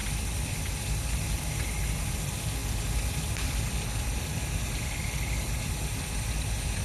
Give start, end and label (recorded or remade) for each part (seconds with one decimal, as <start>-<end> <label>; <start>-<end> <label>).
0.0-6.8 recorded